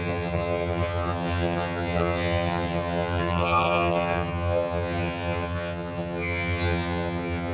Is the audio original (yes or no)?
no